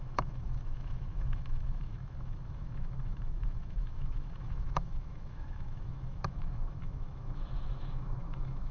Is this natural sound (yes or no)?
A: no